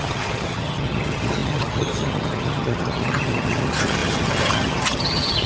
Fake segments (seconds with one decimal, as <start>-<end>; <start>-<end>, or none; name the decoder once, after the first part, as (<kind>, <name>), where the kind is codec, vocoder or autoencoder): 0.0-5.5 (vocoder, HiFi-GAN)